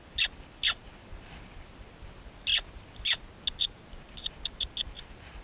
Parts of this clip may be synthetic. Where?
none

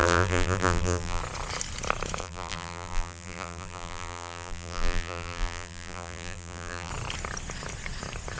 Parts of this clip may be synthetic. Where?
0.0-1.2 (vocoder, BigVGAN v2); 2.2-6.9